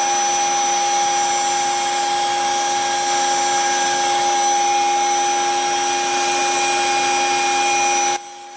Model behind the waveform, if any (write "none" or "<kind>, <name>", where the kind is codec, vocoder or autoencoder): none